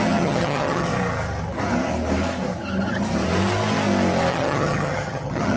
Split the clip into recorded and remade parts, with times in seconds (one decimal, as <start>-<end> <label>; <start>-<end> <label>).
0.0-0.9 remade; 0.9-4.3 recorded; 4.3-5.6 remade

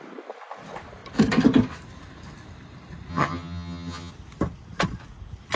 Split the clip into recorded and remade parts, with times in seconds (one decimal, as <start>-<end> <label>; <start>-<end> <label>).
0.0-3.1 recorded; 3.1-4.1 remade; 4.1-5.6 recorded

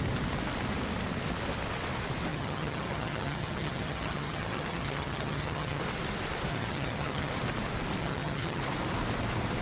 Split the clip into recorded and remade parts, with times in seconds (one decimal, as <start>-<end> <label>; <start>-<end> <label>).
0.0-2.3 recorded; 2.3-5.8 remade; 5.8-6.5 recorded; 6.5-7.3 remade; 7.3-8.0 recorded; 8.0-8.6 remade; 8.6-9.6 recorded

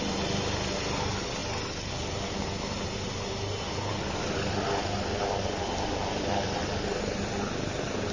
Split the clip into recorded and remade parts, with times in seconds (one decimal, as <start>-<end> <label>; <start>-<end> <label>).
0.0-8.1 recorded

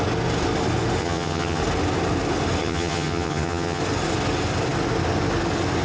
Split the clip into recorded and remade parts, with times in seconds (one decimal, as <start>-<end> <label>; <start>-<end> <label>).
0.0-1.0 recorded; 1.0-1.6 remade; 1.6-2.6 recorded; 2.6-3.8 remade; 3.8-5.8 recorded

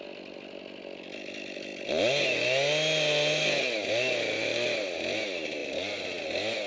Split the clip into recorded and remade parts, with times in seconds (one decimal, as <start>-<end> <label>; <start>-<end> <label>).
0.0-6.7 recorded